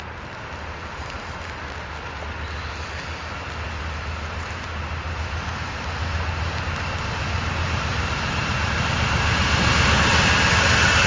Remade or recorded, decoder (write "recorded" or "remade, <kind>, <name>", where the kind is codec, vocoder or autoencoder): recorded